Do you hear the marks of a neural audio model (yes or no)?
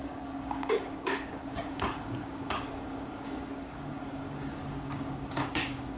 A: yes